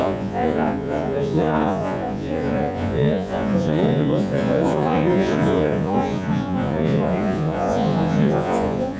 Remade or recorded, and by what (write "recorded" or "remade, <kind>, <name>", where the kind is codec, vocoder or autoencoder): remade, vocoder, Vocos